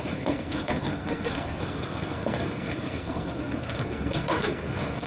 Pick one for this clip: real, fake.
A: fake